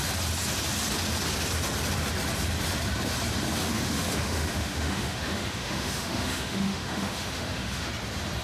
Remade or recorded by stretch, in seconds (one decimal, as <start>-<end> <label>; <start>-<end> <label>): 0.0-3.6 recorded; 3.6-7.9 remade; 7.9-8.4 recorded